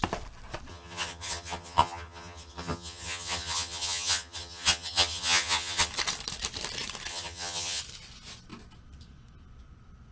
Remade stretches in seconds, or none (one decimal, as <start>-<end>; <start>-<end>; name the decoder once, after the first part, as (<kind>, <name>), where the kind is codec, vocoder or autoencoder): 0.7-5.9 (vocoder, HiFi-GAN); 7.1-7.8